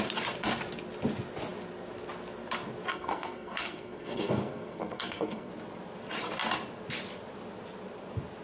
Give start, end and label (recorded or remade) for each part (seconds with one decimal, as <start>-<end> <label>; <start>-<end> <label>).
0.0-2.9 recorded; 2.9-5.5 remade; 5.5-8.4 recorded